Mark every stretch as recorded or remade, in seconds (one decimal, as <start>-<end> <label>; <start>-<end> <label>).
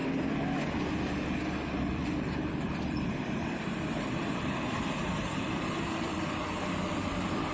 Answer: 0.0-1.4 recorded; 1.4-7.5 remade